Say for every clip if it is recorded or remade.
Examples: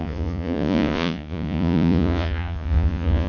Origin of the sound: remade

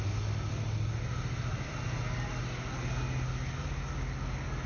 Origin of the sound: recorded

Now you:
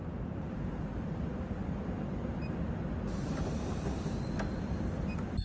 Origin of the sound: recorded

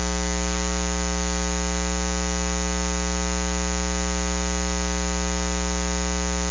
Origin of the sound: recorded